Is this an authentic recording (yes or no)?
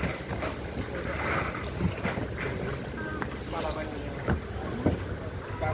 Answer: yes